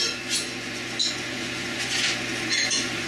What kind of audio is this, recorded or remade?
remade